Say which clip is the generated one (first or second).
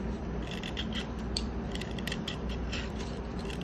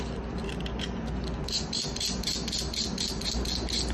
first